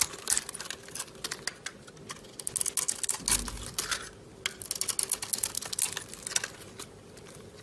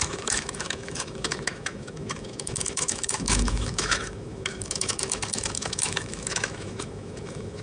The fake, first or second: second